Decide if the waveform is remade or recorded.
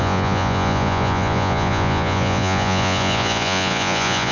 remade